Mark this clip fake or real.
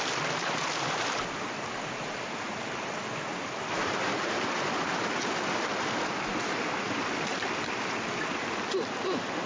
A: real